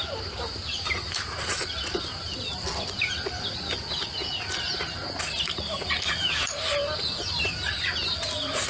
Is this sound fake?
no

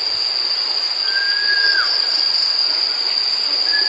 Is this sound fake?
no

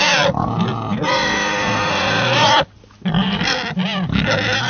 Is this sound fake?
no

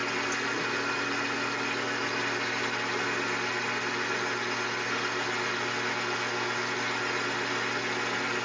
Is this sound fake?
no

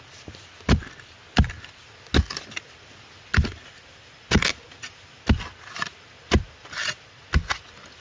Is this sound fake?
no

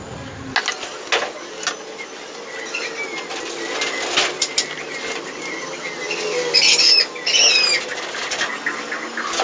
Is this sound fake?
no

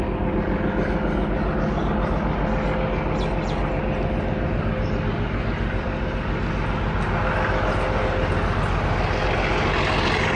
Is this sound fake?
no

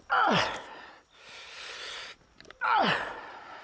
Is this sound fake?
yes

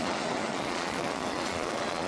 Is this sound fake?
yes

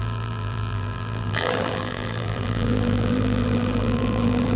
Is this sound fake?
yes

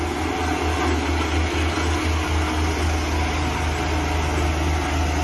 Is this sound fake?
no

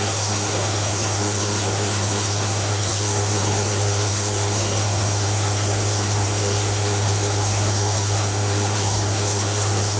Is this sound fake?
yes